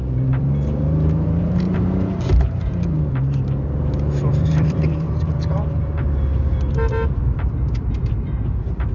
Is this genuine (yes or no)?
no